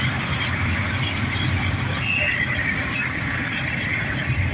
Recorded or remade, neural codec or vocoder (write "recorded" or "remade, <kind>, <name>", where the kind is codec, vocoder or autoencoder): recorded